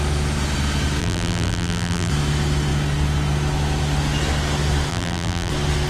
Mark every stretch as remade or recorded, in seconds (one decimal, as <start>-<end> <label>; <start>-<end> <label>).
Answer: 0.0-1.0 recorded; 1.0-2.1 remade; 2.1-4.9 recorded; 4.9-5.5 remade; 5.5-5.9 recorded